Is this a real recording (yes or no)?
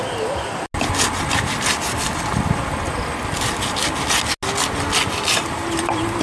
yes